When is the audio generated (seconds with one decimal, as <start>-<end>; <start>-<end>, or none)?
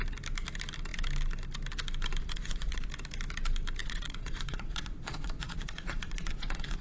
2.2-2.9; 3.8-6.8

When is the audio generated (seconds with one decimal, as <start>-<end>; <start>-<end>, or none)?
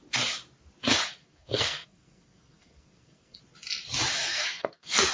1.2-3.4; 4.3-5.1